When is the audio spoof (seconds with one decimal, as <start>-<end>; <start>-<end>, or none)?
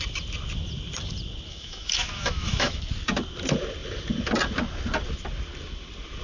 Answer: 1.5-2.8